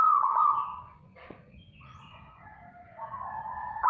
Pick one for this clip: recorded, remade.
remade